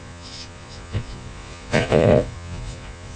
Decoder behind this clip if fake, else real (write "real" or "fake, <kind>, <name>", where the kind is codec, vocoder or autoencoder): fake, vocoder, Vocos